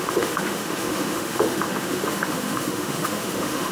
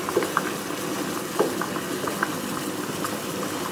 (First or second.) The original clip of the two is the second